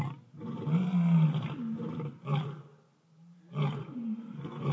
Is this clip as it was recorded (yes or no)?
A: yes